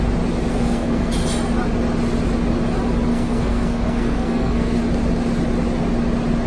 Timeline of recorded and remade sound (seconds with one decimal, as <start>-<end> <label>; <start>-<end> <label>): 0.0-0.5 recorded; 0.5-1.1 remade; 1.1-3.1 recorded; 3.1-4.8 remade; 4.8-6.5 recorded